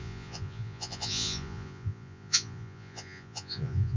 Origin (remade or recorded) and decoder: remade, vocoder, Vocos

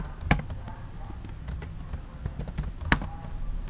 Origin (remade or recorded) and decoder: recorded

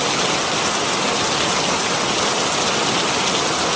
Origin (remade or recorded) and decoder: recorded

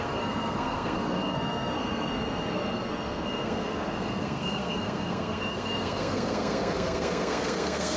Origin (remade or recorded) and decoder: remade, codec, SNAC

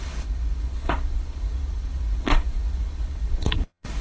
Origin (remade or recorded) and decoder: remade, vocoder, Vocos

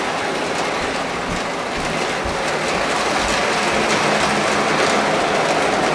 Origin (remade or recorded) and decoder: recorded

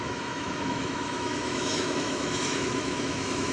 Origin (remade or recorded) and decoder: remade, autoencoder, DAC-VAE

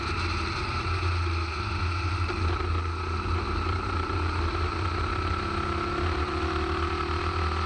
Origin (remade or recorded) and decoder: recorded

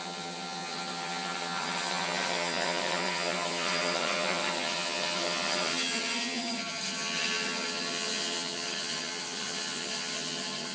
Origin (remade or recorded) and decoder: remade, vocoder, HiFi-GAN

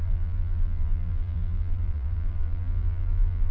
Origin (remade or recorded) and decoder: remade, vocoder, BigVGAN v2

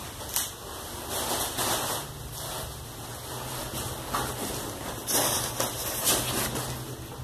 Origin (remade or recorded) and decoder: recorded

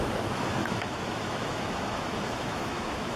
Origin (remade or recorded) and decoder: remade, autoencoder, DAC-VAE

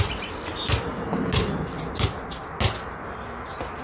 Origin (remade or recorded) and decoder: recorded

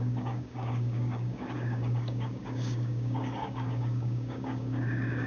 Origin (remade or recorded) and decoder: remade, codec, DAC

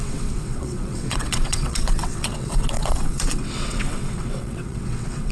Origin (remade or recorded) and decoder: remade, vocoder, WaveNeXt